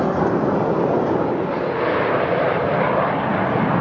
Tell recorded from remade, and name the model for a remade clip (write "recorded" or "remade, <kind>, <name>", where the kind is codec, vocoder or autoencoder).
recorded